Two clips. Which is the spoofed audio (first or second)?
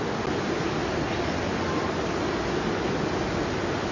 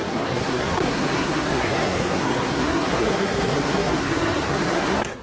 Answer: second